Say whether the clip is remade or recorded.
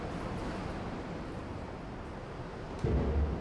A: recorded